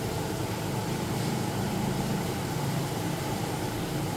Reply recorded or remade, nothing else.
remade